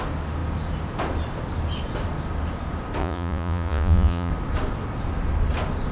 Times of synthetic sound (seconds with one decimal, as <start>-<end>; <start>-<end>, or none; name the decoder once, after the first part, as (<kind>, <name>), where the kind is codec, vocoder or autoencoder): 3.0-4.3 (vocoder, Vocos)